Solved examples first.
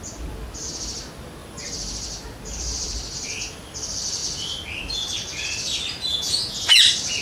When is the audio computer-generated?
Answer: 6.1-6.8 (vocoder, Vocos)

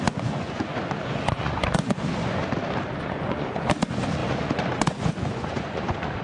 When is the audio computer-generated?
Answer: 0.0-2.4 (vocoder, Vocos); 3.0-6.2

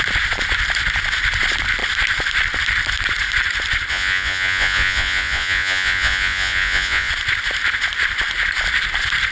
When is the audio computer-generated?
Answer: 3.9-7.1 (vocoder, Vocos)

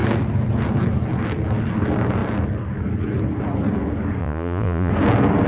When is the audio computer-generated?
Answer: 4.2-4.9 (vocoder, Vocos)

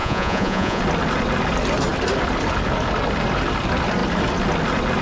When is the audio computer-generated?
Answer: 0.0-0.8 (vocoder, Vocos)

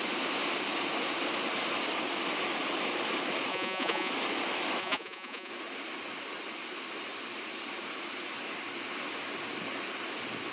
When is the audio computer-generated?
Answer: 3.5-4.1 (vocoder, Vocos); 4.8-5.5

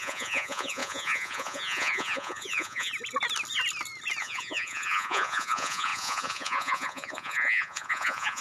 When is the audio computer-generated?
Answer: 0.0-2.9 (vocoder, Vocos); 4.2-8.4

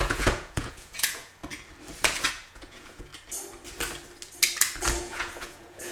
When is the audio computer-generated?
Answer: 0.0-1.4 (vocoder, Vocos); 2.3-3.1; 5.0-5.9